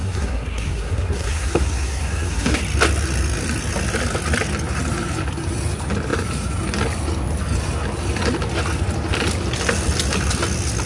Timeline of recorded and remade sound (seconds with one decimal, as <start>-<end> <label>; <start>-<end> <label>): 0.0-2.6 remade; 2.6-10.9 recorded